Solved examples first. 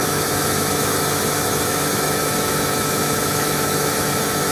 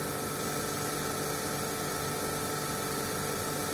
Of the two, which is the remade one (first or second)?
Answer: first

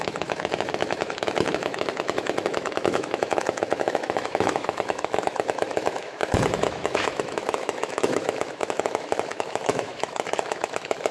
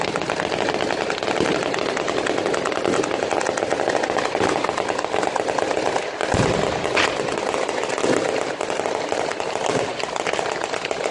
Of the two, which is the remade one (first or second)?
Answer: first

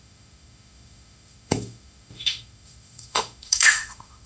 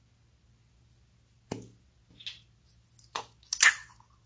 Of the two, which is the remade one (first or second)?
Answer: first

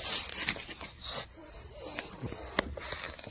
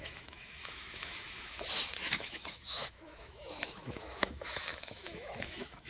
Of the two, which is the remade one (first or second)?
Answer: second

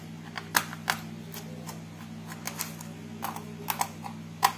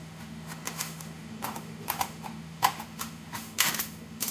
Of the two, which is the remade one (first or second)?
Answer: second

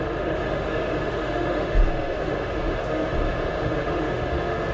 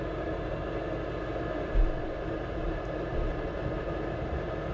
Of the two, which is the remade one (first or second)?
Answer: first